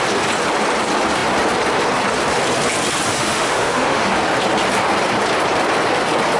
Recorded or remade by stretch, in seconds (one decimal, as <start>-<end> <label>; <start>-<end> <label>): 0.0-3.1 recorded; 3.1-4.1 remade; 4.1-6.4 recorded